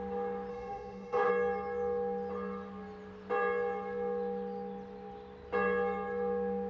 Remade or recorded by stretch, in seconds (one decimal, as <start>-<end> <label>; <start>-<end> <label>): 0.0-0.5 recorded; 0.5-1.3 remade; 1.3-6.7 recorded